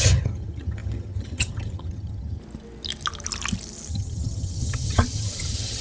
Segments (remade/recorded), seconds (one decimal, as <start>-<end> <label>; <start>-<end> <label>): 0.0-2.4 remade; 2.4-3.9 recorded; 3.9-5.8 remade